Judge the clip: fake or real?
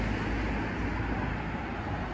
real